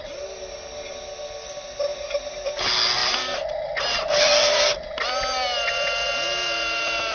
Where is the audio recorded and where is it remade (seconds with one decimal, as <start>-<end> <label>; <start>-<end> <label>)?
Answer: 0.0-7.1 recorded